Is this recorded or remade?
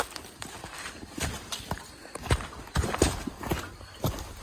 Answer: recorded